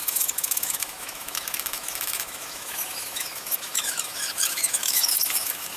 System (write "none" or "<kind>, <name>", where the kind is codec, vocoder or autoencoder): autoencoder, DAC-VAE